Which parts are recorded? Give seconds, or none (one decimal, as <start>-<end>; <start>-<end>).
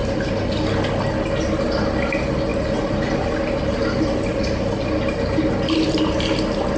0.0-6.8